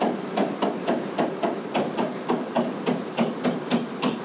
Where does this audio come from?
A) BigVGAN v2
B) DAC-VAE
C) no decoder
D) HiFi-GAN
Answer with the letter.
A